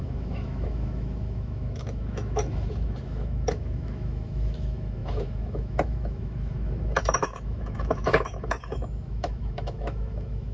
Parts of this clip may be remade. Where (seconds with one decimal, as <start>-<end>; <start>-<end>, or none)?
0.0-10.5